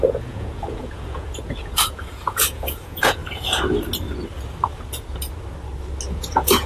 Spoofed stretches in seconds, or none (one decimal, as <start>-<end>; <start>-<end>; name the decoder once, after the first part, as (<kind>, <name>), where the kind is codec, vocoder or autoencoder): 0.0-3.2 (vocoder, Vocos); 6.1-6.7